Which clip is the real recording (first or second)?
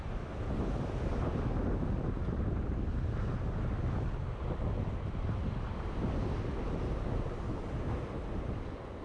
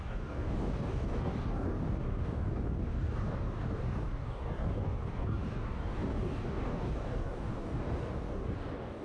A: first